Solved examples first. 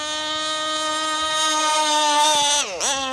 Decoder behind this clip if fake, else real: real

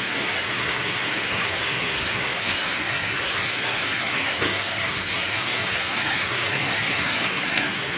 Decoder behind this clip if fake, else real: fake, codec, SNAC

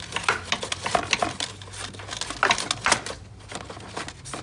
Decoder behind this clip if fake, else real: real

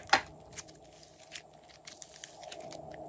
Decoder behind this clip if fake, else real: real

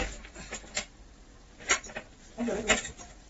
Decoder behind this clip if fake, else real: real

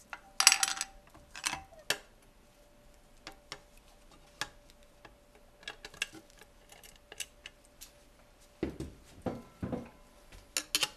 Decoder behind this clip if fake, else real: real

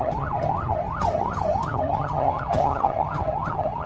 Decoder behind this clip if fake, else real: fake, vocoder, HiFi-GAN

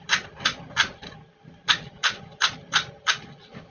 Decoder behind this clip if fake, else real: fake, vocoder, BigVGAN v2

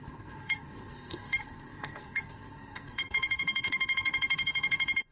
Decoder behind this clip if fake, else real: fake, codec, SNAC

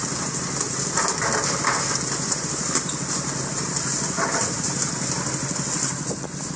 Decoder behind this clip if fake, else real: real